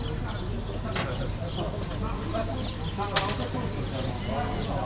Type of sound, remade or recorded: recorded